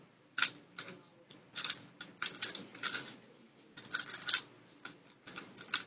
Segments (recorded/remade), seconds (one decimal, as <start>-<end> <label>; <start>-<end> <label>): 0.0-1.1 remade; 1.1-1.9 recorded; 1.9-2.7 remade; 2.7-3.4 recorded; 3.4-5.9 remade